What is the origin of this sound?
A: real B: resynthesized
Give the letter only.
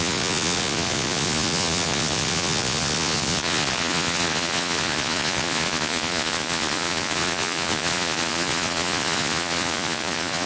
B